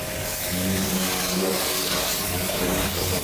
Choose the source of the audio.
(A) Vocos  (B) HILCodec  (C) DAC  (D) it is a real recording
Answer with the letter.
C